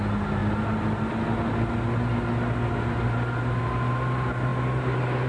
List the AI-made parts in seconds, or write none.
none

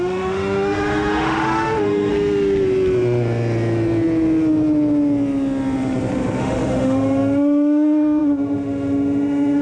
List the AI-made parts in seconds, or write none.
0.0-2.1 (autoencoder, DAC-VAE); 6.4-9.6

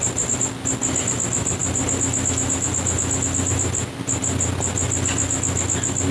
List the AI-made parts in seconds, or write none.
none

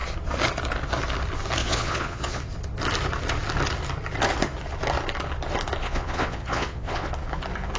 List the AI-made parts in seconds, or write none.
1.6-2.4 (vocoder, Vocos); 5.8-7.1

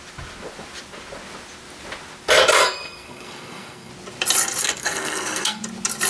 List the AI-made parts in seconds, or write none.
2.6-3.9 (codec, SNAC); 4.6-5.6

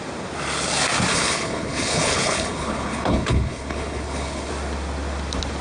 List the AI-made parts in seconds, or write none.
1.1-4.5 (codec, HILCodec)

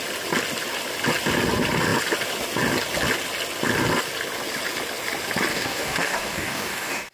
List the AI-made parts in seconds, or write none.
5.5-7.1 (codec, DAC)

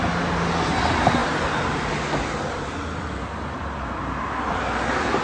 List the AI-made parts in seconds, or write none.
none